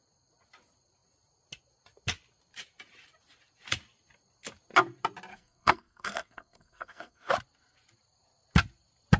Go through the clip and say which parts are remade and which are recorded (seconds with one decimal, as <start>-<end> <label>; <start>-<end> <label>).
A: 0.0-5.3 recorded; 5.3-7.3 remade; 7.3-9.2 recorded